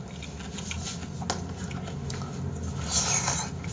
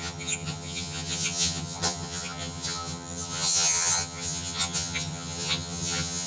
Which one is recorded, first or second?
first